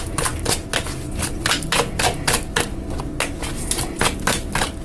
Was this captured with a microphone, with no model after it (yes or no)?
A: yes